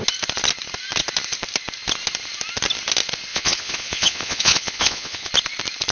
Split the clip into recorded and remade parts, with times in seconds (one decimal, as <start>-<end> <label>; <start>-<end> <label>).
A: 0.0-3.3 recorded; 3.3-5.3 remade; 5.3-5.9 recorded